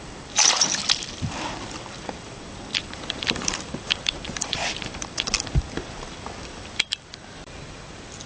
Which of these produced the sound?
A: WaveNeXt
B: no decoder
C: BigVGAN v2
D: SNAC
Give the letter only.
C